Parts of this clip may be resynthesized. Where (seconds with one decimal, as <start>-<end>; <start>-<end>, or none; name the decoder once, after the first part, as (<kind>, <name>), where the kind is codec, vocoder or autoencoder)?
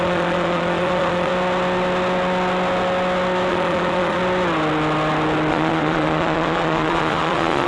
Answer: 0.0-1.3 (vocoder, Vocos); 3.5-4.2; 5.5-7.7